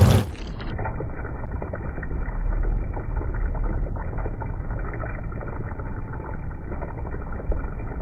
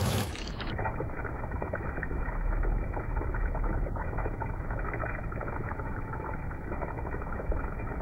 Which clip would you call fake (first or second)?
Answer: second